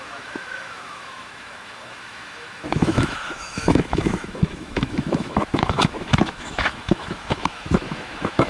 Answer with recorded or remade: remade